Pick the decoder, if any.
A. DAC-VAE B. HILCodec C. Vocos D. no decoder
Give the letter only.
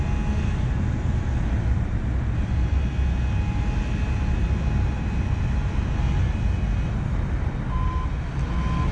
D